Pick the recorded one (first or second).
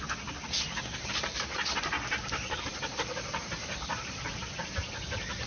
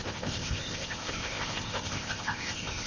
first